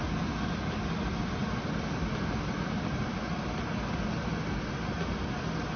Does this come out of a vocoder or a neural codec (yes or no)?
no